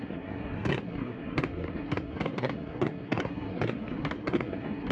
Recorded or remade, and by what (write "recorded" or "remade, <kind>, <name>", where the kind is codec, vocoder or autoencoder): remade, codec, SNAC